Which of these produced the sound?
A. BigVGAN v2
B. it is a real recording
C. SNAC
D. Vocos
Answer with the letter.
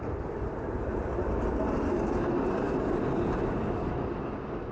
B